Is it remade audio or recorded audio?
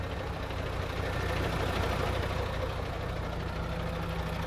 recorded